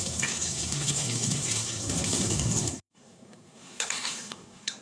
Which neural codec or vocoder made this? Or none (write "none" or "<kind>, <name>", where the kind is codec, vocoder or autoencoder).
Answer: codec, SNAC